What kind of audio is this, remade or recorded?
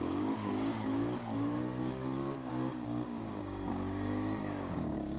remade